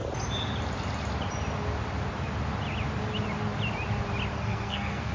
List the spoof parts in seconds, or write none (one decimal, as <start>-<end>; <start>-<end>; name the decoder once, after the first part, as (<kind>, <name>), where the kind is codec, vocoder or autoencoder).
4.3-5.1 (codec, SNAC)